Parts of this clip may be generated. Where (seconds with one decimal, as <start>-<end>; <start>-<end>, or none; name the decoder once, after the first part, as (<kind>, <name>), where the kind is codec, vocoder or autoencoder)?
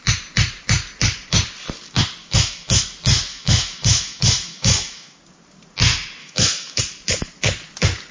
2.2-2.8 (autoencoder, DAC-VAE); 3.3-5.2; 6.2-6.8